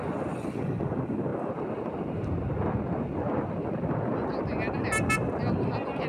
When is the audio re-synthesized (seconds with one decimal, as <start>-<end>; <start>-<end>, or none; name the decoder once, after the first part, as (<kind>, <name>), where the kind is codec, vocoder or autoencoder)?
none